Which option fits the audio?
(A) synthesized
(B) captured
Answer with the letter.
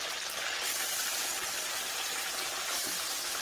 B